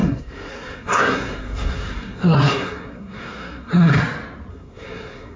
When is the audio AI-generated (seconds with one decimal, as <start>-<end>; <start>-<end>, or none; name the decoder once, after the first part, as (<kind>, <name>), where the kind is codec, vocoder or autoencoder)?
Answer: 0.0-4.0 (codec, SNAC); 4.5-5.4